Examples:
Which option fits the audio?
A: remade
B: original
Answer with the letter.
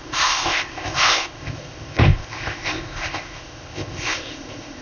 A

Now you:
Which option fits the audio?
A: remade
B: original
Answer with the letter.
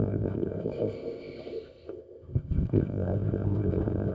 A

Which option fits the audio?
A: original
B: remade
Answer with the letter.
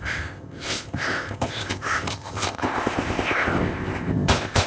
B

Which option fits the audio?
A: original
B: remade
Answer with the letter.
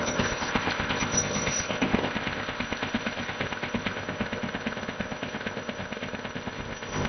B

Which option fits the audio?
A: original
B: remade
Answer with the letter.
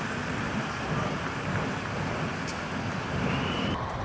A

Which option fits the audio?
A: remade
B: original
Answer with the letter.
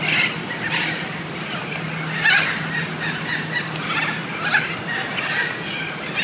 B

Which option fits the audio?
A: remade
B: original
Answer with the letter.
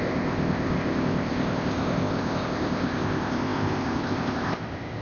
A